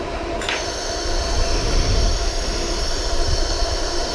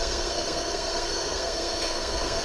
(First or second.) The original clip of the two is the first